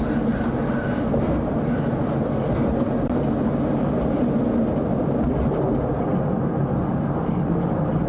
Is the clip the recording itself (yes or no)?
yes